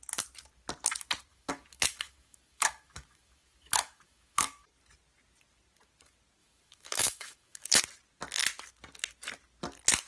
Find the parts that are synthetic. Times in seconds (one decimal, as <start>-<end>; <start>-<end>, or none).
1.3-4.7; 6.4-7.8